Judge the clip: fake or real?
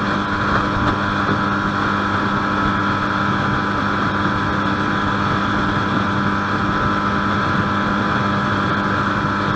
real